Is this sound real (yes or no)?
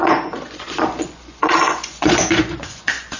no